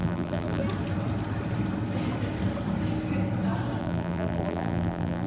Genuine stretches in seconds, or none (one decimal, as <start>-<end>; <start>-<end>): 0.6-3.8